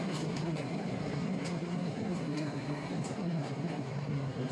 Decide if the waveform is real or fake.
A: fake